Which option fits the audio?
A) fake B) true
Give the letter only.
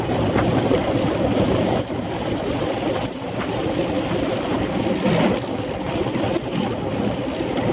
B